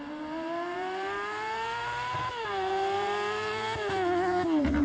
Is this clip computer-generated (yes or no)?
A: yes